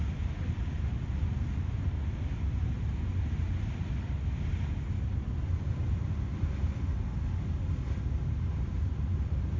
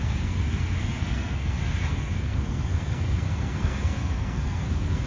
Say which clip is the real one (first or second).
first